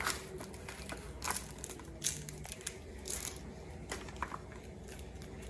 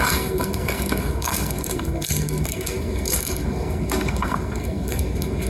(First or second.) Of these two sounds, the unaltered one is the first